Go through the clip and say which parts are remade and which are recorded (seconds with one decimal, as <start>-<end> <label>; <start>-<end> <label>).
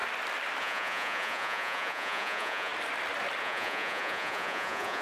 0.0-0.6 recorded; 0.6-2.7 remade; 2.7-3.4 recorded; 3.4-5.0 remade